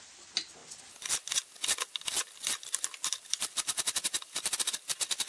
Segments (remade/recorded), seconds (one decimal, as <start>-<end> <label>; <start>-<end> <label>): 0.0-5.3 recorded